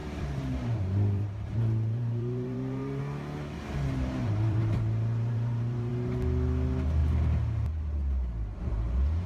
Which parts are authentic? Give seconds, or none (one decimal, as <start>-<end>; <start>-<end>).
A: 3.0-4.2; 5.9-9.3